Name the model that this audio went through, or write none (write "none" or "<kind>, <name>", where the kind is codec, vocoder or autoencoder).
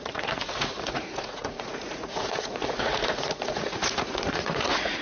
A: vocoder, Vocos